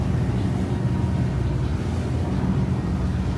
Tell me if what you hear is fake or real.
real